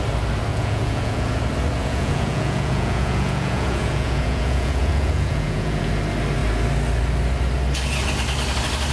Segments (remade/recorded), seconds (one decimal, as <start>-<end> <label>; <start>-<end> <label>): 0.0-0.5 recorded; 0.5-1.4 remade; 1.4-1.8 recorded; 1.8-5.9 remade; 5.9-8.9 recorded